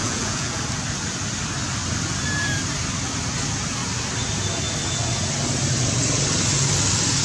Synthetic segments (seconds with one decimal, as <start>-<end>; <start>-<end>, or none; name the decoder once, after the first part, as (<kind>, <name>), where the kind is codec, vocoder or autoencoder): 0.0-0.6 (vocoder, Vocos)